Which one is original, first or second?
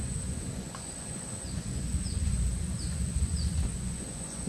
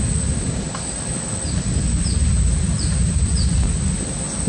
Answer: second